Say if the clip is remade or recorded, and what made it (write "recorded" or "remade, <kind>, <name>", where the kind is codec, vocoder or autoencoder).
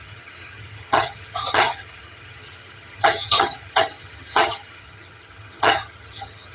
remade, vocoder, HiFi-GAN